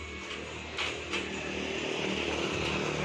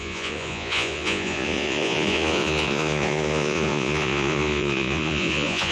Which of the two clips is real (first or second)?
first